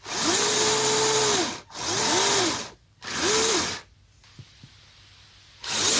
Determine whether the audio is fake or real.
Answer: real